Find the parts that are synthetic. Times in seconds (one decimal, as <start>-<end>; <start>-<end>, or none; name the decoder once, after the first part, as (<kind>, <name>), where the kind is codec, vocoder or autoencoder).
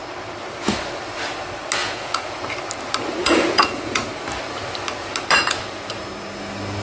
1.8-2.4 (vocoder, Vocos); 3.2-4.1; 5.4-5.9